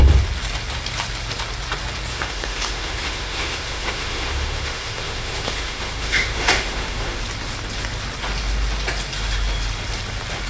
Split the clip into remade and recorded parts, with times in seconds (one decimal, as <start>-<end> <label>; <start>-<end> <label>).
0.0-2.1 recorded; 2.1-7.2 remade; 7.2-10.5 recorded